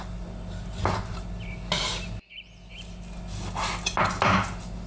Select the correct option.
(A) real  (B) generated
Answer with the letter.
A